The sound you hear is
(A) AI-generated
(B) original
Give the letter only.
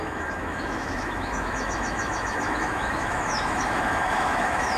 A